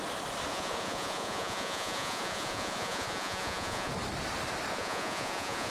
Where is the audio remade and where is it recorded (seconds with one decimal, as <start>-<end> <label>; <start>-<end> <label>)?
0.0-0.5 recorded; 0.5-3.9 remade; 3.9-4.7 recorded; 4.7-5.7 remade